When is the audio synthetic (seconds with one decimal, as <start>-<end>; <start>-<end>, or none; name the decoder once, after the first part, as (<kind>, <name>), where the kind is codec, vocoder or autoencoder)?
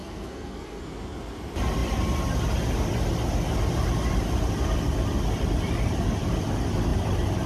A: 0.0-0.8 (codec, SNAC)